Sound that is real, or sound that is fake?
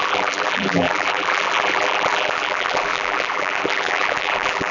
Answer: fake